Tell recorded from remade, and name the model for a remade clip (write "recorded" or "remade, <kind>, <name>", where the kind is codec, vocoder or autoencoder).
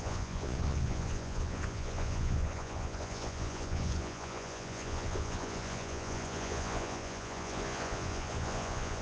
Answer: remade, vocoder, Vocos